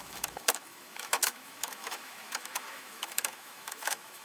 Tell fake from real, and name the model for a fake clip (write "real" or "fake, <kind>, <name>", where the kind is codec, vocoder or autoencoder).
fake, autoencoder, DAC-VAE